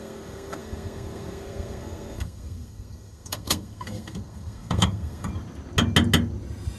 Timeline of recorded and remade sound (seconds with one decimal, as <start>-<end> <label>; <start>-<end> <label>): 0.0-5.3 remade; 5.3-6.8 recorded